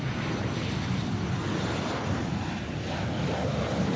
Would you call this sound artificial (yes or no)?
no